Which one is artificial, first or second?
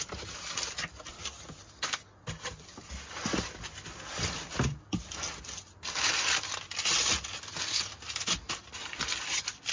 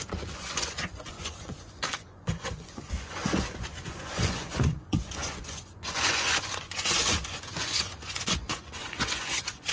second